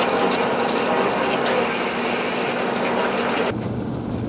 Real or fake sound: real